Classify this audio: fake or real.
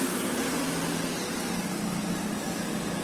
real